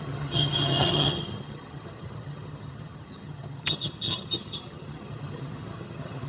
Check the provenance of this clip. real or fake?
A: fake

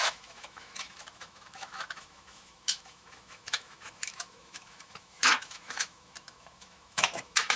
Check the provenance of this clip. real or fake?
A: fake